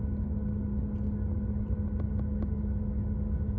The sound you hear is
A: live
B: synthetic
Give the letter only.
A